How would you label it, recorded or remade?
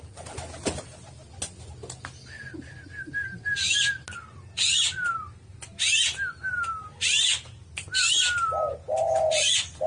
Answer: recorded